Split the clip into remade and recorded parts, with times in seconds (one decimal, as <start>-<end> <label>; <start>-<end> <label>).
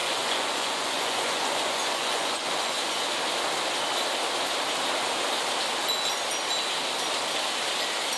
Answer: 0.0-3.0 remade; 3.0-8.2 recorded